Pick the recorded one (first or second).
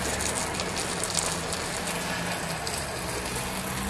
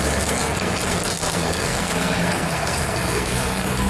first